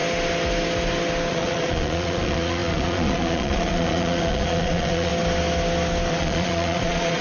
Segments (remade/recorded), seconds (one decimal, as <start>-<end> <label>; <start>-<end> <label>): 0.0-1.3 recorded; 1.3-5.1 remade; 5.1-6.1 recorded; 6.1-7.2 remade